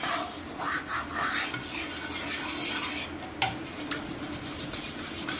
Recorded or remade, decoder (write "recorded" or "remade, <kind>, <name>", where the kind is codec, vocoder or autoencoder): recorded